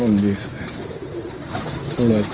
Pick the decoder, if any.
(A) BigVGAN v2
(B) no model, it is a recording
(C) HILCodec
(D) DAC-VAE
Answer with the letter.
B